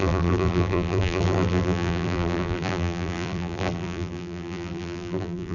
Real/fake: fake